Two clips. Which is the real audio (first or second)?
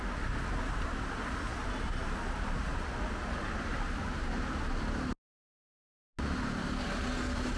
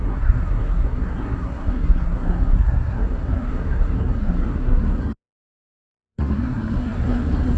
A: first